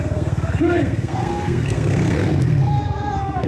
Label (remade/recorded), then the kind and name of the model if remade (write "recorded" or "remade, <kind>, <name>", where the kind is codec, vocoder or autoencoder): remade, codec, SNAC